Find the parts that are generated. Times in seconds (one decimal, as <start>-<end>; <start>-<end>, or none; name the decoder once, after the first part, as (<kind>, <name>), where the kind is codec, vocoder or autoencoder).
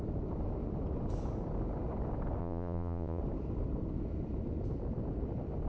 2.4-3.2 (vocoder, Vocos)